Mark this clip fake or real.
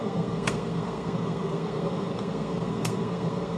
fake